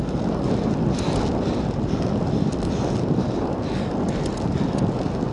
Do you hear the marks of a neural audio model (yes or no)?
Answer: no